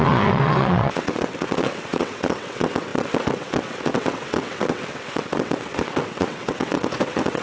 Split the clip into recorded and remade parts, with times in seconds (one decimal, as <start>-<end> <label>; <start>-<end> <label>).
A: 0.0-7.4 remade